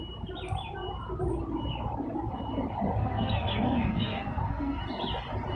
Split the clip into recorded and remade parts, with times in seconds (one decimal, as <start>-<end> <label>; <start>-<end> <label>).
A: 0.0-3.0 recorded; 3.0-4.8 remade; 4.8-5.6 recorded